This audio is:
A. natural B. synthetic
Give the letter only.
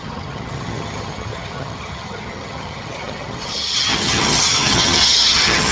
B